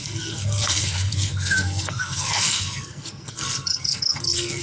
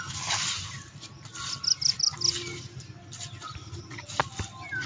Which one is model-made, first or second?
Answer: first